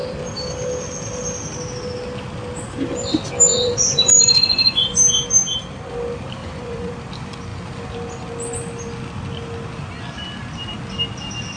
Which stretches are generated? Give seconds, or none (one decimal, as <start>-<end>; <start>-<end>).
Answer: 3.5-5.0; 6.4-6.9